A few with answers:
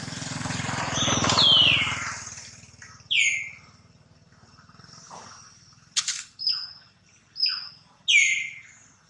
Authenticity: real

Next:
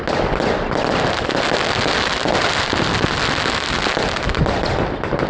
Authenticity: real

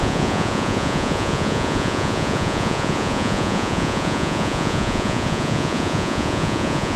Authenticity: fake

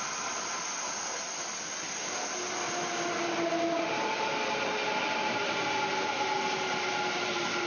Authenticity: real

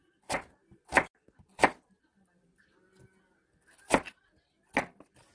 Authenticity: real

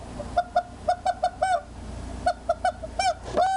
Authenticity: real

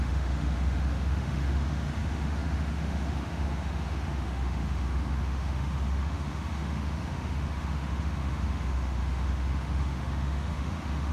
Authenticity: fake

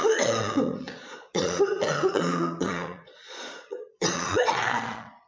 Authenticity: fake